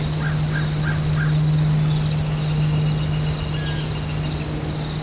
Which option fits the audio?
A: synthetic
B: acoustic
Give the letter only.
B